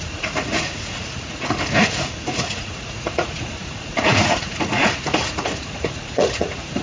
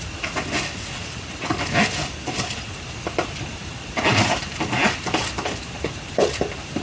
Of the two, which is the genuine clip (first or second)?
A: second